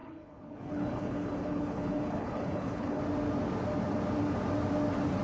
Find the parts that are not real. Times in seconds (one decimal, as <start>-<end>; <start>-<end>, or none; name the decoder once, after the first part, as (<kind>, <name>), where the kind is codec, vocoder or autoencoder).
0.0-3.0 (codec, HILCodec)

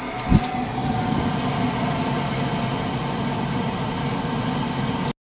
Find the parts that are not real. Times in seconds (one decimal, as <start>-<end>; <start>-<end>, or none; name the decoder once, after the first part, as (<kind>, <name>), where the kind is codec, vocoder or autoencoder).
none

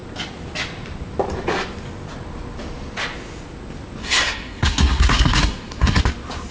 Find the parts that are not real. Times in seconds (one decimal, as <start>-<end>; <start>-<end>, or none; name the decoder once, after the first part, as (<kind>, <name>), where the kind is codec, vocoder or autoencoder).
4.0-6.0 (codec, SNAC)

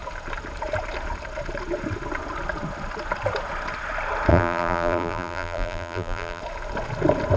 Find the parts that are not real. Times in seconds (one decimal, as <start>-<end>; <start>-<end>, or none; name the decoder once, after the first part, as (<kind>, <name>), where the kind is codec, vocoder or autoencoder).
4.3-6.4 (vocoder, BigVGAN v2)

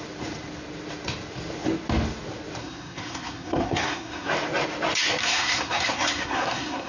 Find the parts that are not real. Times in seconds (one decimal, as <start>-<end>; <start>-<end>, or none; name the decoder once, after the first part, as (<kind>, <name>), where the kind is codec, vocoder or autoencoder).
2.6-4.3 (codec, SNAC); 5.2-6.9